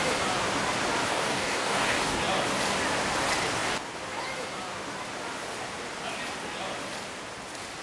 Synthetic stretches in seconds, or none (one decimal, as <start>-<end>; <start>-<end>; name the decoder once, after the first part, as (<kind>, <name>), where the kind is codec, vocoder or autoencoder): 1.1-2.2 (codec, DAC)